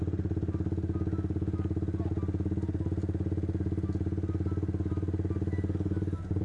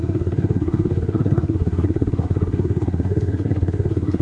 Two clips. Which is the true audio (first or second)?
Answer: first